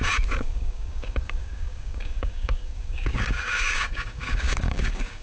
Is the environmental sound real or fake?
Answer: fake